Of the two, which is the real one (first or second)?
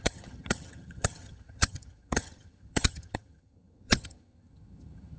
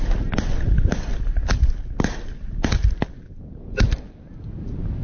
second